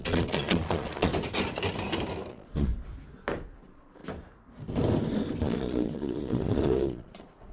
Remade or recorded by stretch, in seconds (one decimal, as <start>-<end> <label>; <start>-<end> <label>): 0.0-1.1 remade; 1.1-2.3 recorded; 2.3-2.7 remade; 2.7-3.6 recorded; 3.6-4.0 remade; 4.0-5.4 recorded; 5.4-7.5 remade